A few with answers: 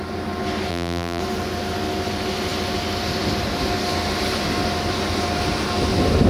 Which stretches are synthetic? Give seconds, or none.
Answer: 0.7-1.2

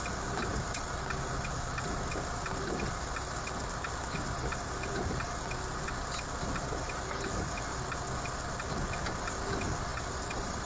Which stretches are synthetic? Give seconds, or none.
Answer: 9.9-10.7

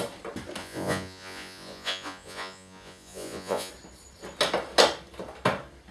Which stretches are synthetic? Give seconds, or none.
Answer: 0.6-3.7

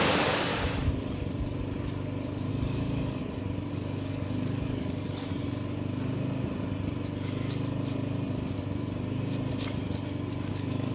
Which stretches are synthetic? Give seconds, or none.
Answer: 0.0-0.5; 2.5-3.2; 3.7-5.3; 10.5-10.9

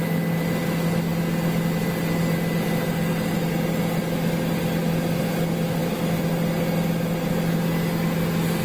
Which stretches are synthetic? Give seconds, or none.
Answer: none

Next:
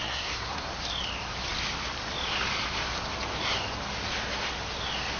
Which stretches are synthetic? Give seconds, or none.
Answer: 0.0-0.7

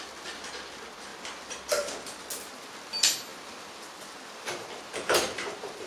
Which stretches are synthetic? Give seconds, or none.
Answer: 3.3-5.9

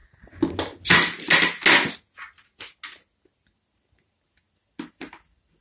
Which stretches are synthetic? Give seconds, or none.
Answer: none